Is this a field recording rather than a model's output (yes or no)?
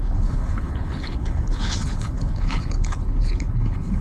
no